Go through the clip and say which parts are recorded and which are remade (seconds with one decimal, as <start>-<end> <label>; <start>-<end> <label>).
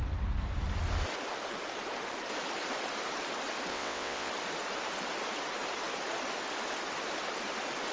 0.0-3.7 recorded; 3.7-4.3 remade; 4.3-7.9 recorded